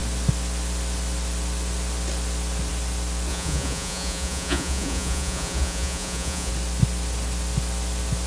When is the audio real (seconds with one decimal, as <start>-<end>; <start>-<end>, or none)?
0.0-3.3; 6.5-8.3